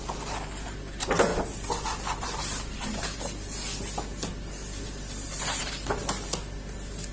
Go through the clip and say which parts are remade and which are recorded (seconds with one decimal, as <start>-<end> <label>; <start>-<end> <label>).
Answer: 0.0-7.1 recorded